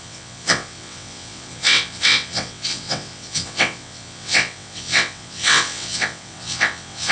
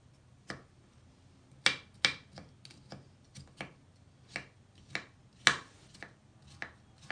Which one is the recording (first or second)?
second